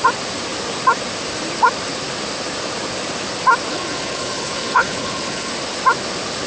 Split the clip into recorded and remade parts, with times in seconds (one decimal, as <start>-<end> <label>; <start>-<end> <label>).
0.0-3.7 recorded; 3.7-5.5 remade; 5.5-6.5 recorded